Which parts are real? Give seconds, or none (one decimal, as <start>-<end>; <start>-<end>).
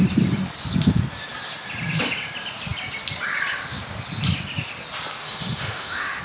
0.0-5.2